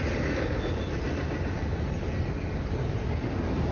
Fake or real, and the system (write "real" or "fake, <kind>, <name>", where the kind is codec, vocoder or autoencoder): real